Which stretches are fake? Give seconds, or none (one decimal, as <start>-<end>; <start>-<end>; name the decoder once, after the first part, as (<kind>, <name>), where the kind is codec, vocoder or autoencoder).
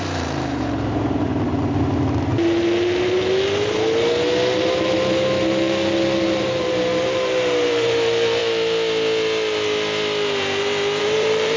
0.0-1.5 (vocoder, BigVGAN v2); 6.4-8.4; 11.0-11.6